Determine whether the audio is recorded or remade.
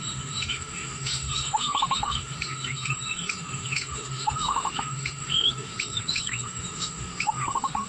remade